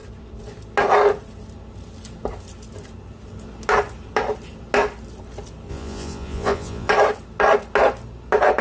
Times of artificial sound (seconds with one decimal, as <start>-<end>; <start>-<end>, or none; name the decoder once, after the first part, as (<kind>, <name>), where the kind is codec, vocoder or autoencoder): 5.7-6.9 (vocoder, Vocos)